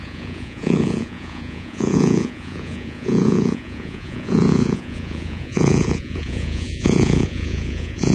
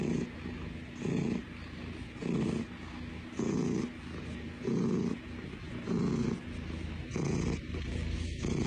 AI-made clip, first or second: first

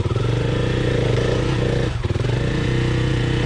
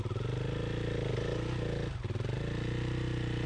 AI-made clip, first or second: first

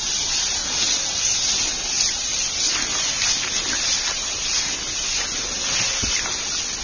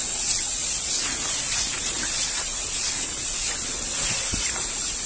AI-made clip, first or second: second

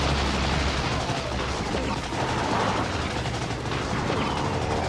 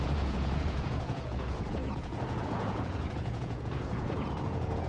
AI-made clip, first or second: second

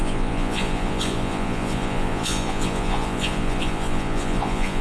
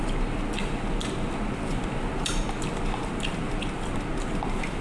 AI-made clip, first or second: first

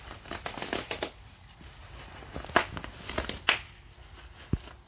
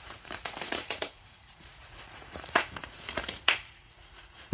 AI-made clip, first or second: second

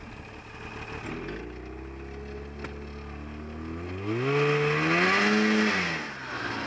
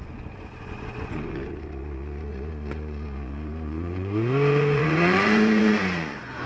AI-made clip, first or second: second